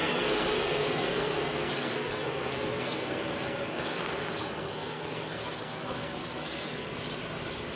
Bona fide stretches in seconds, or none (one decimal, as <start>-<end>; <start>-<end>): 4.0-4.4; 6.9-7.8